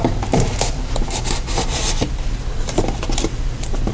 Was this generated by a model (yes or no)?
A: yes